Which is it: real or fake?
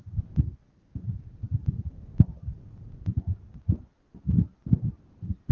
real